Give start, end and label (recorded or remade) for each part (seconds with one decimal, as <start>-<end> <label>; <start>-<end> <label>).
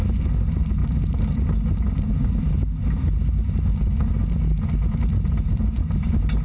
0.0-6.4 recorded